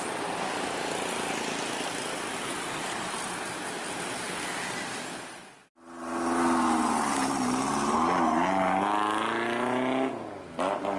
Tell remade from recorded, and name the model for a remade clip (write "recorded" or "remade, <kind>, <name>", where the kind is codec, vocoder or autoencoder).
recorded